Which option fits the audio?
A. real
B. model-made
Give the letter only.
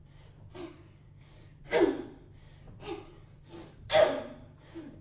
B